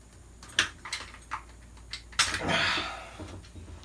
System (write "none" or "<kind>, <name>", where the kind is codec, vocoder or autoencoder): none